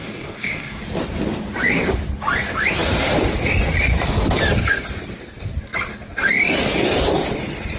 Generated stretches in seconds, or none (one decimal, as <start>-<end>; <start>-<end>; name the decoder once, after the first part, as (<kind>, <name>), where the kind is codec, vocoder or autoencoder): 0.0-0.8 (codec, DAC)